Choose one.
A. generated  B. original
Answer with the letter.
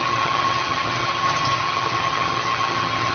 A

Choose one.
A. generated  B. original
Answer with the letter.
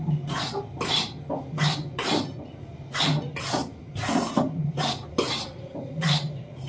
B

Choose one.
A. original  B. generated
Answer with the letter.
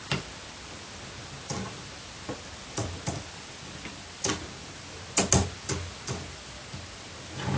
A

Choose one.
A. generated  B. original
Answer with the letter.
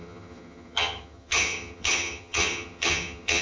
A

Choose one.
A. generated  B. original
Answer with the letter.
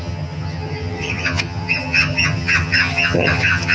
A